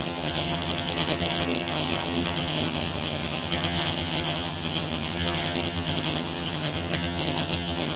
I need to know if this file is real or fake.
fake